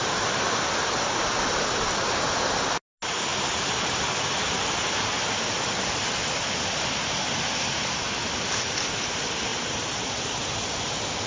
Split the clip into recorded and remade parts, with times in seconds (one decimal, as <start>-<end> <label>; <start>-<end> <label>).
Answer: 0.0-9.5 recorded; 9.5-10.9 remade; 10.9-11.3 recorded